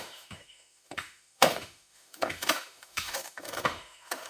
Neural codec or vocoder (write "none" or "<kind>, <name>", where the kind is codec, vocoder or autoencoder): autoencoder, DAC-VAE